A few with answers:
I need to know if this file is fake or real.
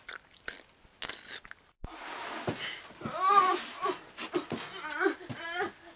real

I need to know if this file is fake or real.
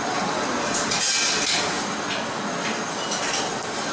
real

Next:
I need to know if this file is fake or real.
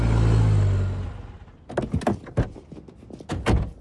real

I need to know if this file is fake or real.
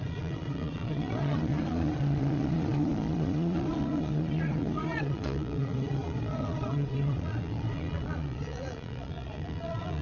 fake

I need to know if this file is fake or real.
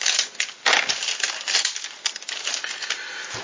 real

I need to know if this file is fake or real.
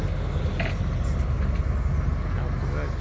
real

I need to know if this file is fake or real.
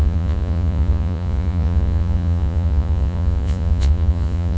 fake